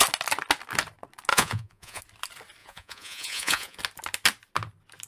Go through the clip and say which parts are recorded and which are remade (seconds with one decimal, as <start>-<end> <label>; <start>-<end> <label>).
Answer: 0.0-1.3 recorded; 1.3-2.0 remade; 2.0-2.6 recorded; 2.6-3.8 remade; 3.8-5.1 recorded